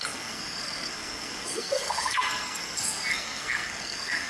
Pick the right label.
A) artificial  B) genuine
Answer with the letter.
A